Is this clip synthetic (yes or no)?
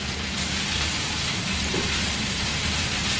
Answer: yes